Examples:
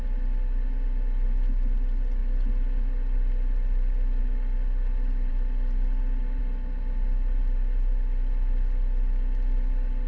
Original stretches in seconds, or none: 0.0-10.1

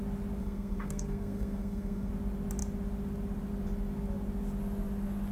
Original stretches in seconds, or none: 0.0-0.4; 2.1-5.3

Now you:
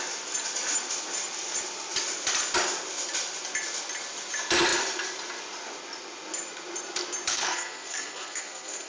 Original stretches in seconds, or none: 0.0-7.3

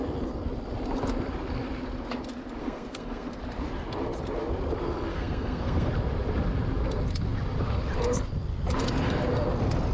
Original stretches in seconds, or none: 0.0-2.6; 3.4-5.1; 5.9-9.9

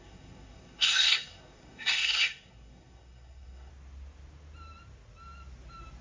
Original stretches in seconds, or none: 3.7-6.0

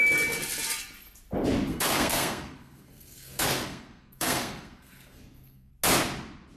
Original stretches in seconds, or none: 0.0-1.7; 5.7-6.6

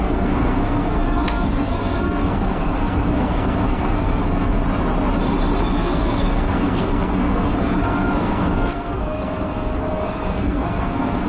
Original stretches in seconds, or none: 4.6-5.6

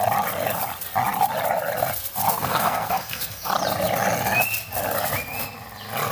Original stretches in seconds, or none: 0.0-2.3; 3.5-6.1